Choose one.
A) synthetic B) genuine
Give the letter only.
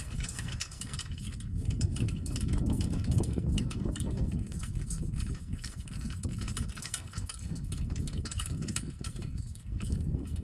A